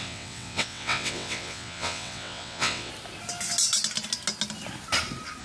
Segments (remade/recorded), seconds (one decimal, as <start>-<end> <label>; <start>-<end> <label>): 0.0-2.9 remade; 2.9-5.4 recorded